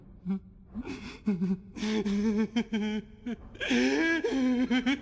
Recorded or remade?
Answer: recorded